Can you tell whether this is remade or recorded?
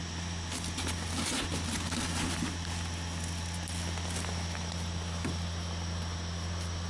recorded